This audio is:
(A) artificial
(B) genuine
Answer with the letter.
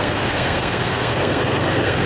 A